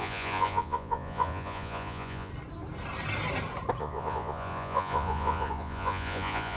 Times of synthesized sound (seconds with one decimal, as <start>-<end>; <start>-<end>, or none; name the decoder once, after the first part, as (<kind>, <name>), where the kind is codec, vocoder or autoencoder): 0.0-2.3 (vocoder, Vocos); 3.8-6.6